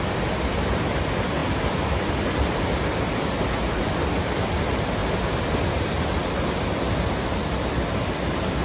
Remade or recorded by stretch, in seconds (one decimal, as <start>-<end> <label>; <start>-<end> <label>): 0.0-8.6 recorded